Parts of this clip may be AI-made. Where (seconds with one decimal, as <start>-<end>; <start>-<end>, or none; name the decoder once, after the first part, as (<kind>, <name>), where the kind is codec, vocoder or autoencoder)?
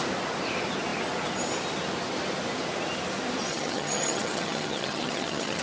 3.5-5.6 (vocoder, HiFi-GAN)